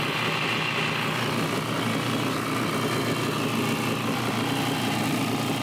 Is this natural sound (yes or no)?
yes